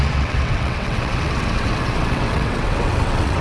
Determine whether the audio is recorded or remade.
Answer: remade